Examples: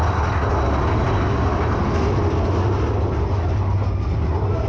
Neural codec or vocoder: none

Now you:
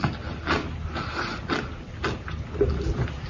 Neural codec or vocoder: none